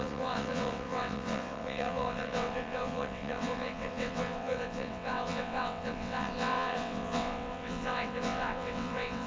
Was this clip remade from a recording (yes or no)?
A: yes